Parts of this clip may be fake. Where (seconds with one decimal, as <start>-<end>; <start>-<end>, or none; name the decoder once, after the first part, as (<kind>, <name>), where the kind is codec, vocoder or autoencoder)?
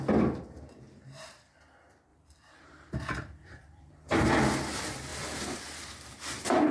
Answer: 2.1-4.3 (vocoder, BigVGAN v2); 5.1-6.7